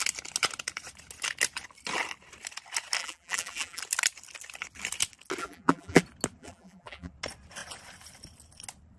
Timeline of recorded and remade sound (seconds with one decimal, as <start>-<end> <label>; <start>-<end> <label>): 0.0-3.0 recorded; 3.0-3.8 remade; 3.8-5.4 recorded; 5.4-6.0 remade; 6.0-6.4 recorded; 6.4-7.1 remade; 7.1-9.0 recorded